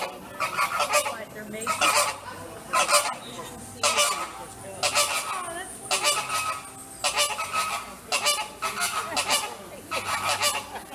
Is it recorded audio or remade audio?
recorded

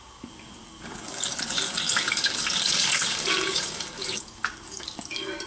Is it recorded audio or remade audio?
remade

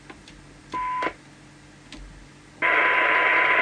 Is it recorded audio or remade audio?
recorded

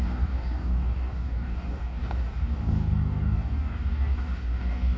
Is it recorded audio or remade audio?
remade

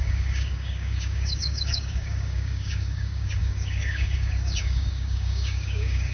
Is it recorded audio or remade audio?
remade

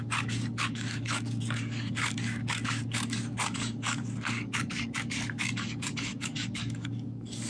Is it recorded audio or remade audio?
remade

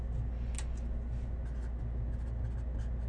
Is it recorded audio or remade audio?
recorded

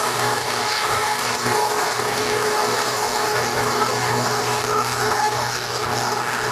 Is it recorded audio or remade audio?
remade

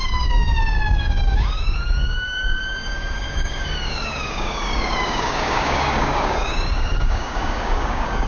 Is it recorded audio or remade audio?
remade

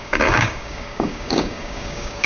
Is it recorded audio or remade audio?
remade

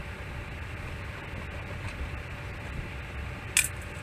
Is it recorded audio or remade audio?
recorded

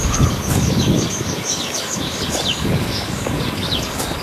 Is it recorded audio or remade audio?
remade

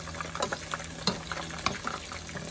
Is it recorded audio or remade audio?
recorded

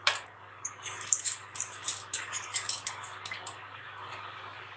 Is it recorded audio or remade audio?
remade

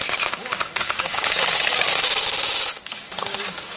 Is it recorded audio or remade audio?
remade